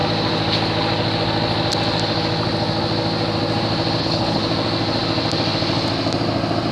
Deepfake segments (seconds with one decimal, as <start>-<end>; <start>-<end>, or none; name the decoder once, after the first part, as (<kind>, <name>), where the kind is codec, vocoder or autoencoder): 4.0-4.4 (codec, HILCodec)